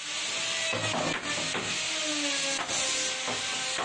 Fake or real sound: real